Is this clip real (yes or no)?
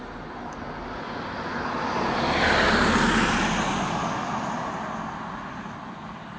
yes